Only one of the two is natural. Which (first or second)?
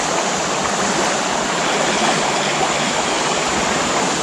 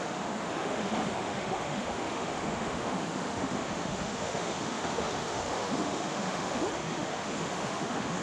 first